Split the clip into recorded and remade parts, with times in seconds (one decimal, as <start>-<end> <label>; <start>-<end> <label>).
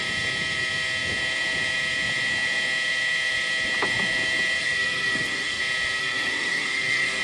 0.0-4.6 recorded; 4.6-5.6 remade; 5.6-6.0 recorded; 6.0-7.2 remade